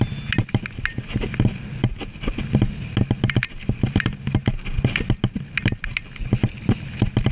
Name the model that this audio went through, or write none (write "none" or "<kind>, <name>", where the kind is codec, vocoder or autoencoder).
none